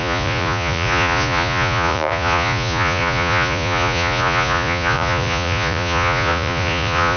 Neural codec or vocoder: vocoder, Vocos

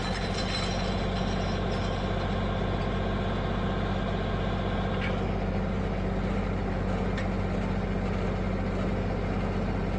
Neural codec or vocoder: none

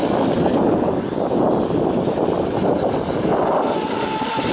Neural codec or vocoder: none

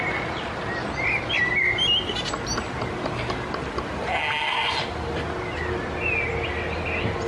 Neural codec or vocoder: none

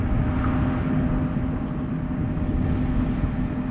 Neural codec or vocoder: none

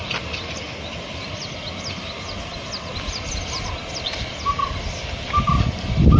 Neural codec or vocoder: none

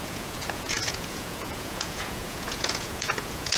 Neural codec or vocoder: vocoder, Vocos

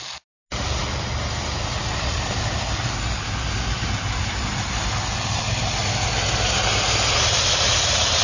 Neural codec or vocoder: none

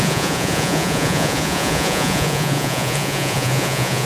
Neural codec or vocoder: vocoder, Vocos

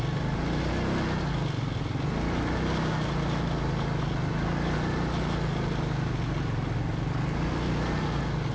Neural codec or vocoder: none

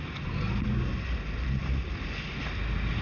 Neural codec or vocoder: none